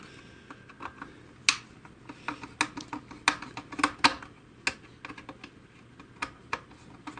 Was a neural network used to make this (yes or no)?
no